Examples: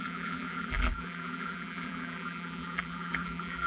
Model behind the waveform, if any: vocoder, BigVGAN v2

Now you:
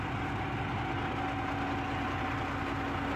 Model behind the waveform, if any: none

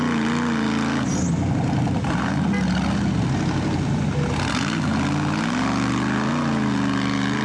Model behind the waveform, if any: none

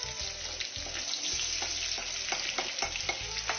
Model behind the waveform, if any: none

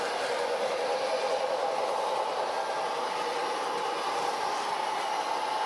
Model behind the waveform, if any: none